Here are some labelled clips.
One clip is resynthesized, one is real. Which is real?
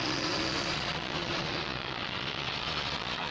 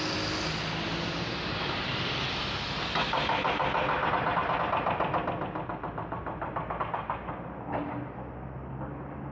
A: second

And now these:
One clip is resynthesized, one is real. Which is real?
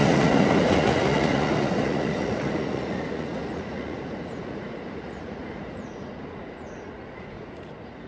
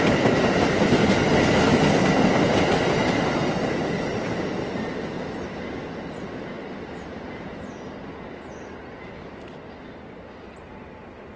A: second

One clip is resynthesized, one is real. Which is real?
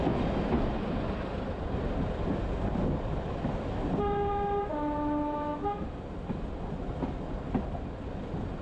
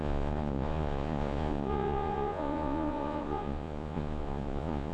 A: first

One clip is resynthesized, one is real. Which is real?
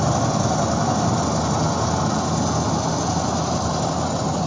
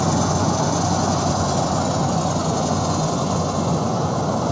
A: first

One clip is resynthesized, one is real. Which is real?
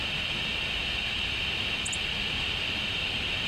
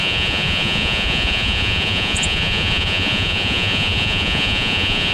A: first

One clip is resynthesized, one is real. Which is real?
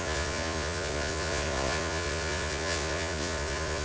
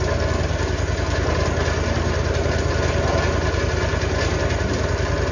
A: second